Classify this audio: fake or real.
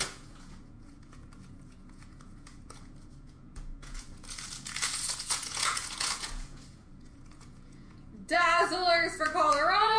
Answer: fake